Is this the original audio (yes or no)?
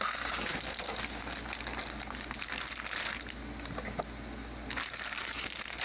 yes